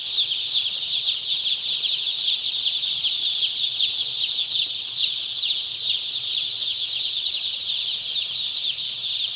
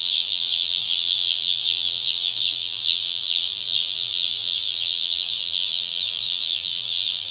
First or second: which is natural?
first